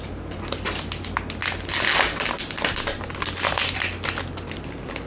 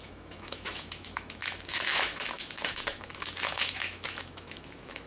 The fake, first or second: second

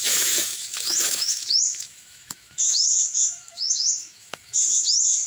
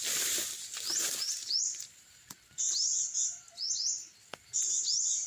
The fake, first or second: first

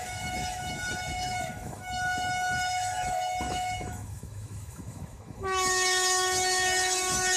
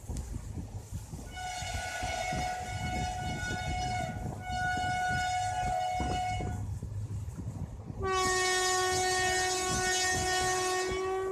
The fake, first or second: first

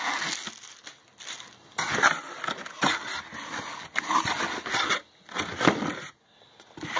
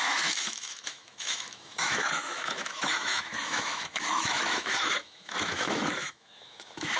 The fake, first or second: second